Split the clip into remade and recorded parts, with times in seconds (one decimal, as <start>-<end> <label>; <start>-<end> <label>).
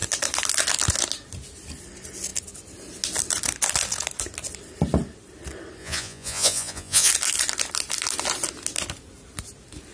0.0-5.8 recorded; 5.8-7.1 remade; 7.1-9.9 recorded